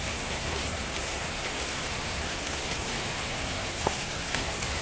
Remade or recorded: remade